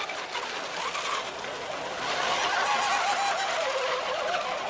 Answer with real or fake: real